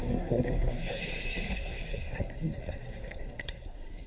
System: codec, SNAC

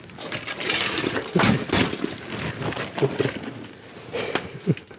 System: none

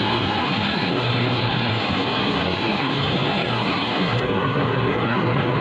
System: codec, SNAC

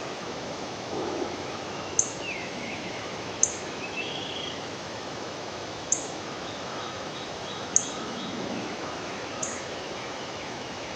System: autoencoder, DAC-VAE